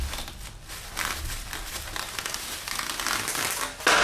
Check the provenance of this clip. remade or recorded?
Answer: recorded